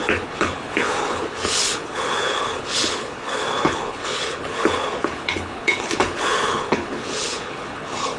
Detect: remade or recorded remade